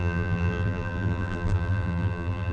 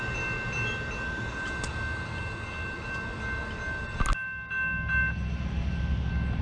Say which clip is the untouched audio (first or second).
second